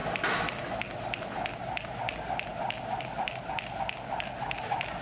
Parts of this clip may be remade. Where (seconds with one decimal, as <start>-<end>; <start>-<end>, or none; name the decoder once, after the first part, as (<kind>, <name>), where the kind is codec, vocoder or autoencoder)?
none